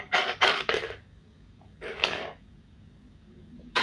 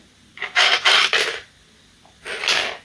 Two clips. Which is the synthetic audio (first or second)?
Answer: first